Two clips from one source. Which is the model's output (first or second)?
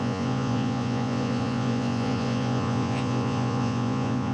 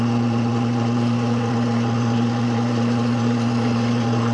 first